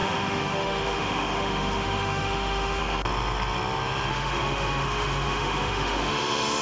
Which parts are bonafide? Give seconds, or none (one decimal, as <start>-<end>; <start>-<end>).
2.8-4.1